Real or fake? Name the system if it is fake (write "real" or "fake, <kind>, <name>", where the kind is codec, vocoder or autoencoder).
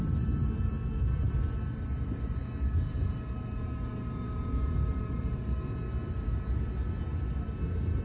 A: real